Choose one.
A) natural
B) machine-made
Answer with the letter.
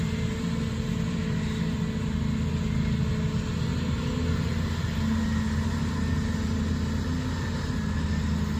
A